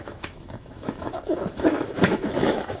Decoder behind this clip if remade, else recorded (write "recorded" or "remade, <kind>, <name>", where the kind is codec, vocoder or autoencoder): remade, autoencoder, DAC-VAE